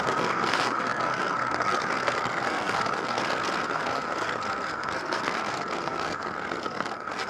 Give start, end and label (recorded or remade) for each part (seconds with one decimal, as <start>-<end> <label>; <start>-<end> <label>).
0.0-7.3 remade